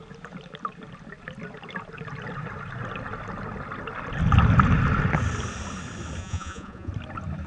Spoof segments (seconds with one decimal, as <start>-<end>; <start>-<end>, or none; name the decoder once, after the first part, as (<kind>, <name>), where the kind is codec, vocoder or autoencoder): 6.2-6.9 (vocoder, Vocos)

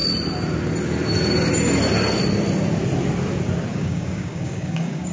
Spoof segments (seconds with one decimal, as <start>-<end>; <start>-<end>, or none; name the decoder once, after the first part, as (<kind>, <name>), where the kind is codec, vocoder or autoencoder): 3.7-5.1 (codec, DAC)

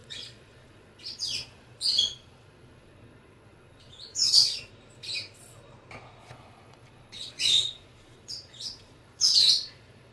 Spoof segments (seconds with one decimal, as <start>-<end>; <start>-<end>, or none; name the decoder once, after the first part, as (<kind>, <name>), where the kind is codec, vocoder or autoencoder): 0.0-4.7 (vocoder, Vocos); 6.2-10.1